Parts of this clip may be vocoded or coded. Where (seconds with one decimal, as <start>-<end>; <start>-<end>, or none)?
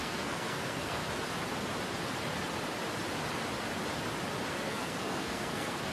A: 0.0-1.0; 4.5-5.9